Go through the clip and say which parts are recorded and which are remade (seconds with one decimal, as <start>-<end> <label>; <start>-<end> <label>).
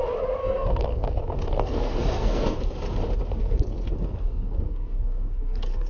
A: 0.0-0.4 recorded; 0.4-2.6 remade; 2.6-3.4 recorded; 3.4-5.9 remade